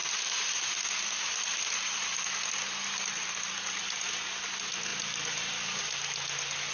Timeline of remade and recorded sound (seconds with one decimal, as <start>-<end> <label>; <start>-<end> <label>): 0.0-6.7 recorded